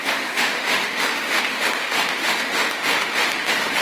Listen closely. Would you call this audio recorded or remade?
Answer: remade